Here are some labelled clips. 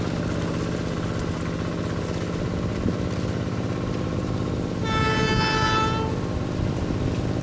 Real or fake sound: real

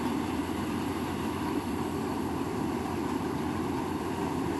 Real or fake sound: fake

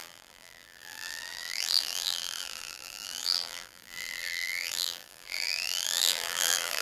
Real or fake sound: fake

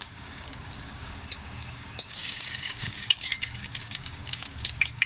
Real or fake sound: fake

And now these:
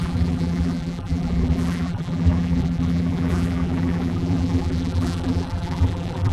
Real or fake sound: fake